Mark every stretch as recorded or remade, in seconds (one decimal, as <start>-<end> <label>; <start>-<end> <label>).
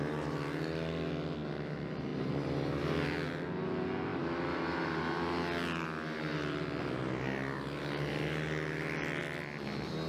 0.0-10.1 recorded